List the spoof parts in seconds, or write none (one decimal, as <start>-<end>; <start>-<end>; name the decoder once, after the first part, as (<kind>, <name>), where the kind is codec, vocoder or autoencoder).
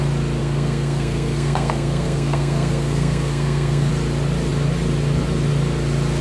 0.4-3.9 (codec, SNAC)